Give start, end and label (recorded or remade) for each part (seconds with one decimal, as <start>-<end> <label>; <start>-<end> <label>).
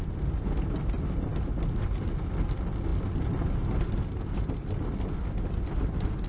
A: 0.0-6.3 recorded